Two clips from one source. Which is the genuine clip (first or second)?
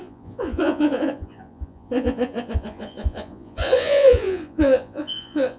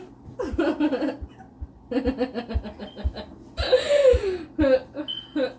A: second